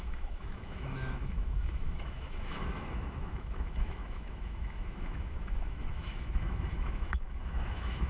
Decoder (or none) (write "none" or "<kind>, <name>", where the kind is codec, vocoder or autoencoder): autoencoder, DAC-VAE